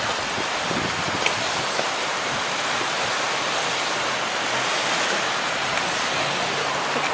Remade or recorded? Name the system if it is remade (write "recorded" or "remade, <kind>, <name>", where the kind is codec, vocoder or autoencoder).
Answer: recorded